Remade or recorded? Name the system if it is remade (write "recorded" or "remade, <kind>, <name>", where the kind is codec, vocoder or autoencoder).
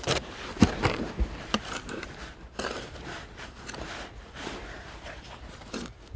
remade, vocoder, BigVGAN v2